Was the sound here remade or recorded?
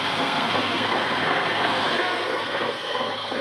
remade